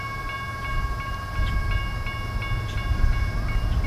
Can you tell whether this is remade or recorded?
recorded